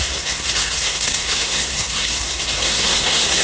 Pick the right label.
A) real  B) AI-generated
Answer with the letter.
B